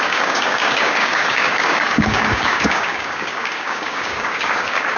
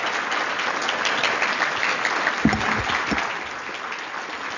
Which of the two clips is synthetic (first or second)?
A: first